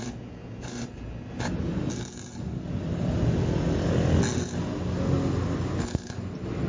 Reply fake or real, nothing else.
real